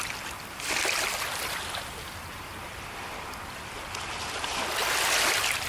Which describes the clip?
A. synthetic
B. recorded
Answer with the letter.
B